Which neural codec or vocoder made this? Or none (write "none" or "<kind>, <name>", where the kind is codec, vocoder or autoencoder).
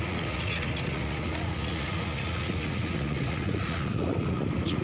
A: vocoder, Vocos